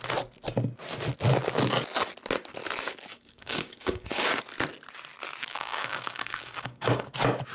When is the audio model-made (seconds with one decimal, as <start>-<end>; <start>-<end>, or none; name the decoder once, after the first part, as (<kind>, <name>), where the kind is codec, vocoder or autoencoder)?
3.1-4.4 (codec, DAC); 5.5-7.1